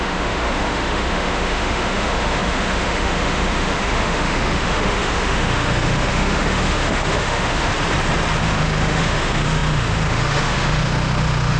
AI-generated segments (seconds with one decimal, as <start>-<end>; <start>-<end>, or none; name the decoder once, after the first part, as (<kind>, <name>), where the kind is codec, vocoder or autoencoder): 0.0-7.7 (autoencoder, DAC-VAE); 8.4-11.6